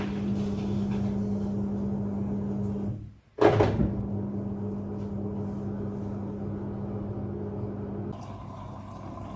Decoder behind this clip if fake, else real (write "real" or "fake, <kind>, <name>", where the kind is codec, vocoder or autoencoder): real